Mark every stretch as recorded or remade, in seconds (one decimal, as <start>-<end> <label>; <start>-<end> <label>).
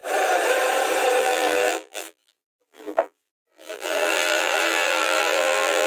0.0-1.2 recorded; 1.2-5.9 remade